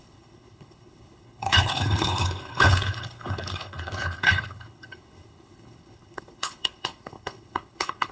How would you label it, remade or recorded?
remade